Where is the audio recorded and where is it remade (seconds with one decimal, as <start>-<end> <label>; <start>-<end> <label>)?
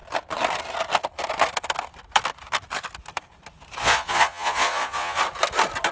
0.0-3.8 recorded; 3.8-5.2 remade; 5.2-5.9 recorded